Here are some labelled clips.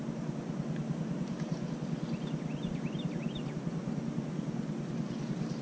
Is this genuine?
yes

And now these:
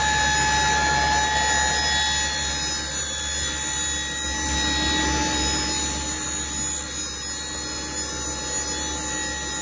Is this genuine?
yes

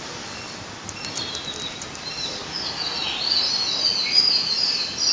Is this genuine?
yes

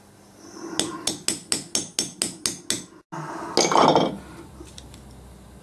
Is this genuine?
yes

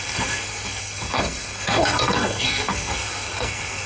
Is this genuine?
no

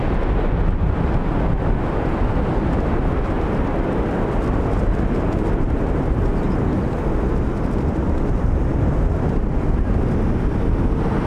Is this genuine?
yes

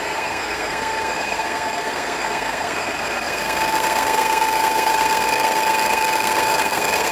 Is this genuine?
no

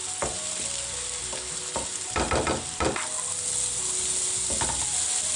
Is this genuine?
yes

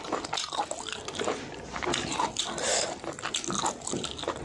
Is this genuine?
yes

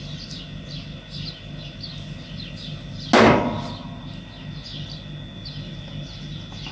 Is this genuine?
yes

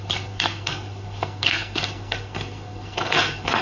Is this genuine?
no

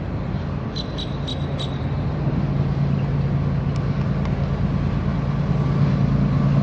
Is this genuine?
yes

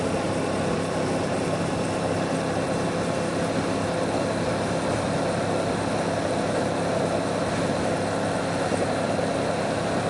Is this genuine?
yes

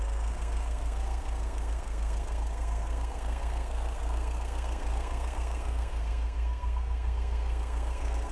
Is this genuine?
no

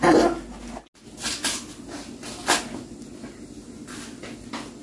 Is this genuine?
yes